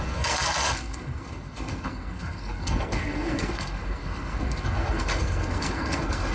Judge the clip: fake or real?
fake